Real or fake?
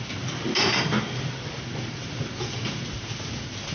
real